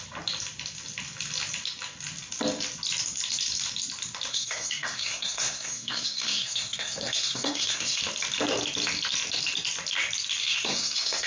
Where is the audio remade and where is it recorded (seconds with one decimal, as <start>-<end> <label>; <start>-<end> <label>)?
0.0-4.3 recorded; 4.3-8.0 remade; 8.0-10.4 recorded; 10.4-11.3 remade